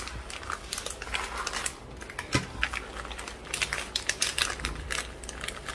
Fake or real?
real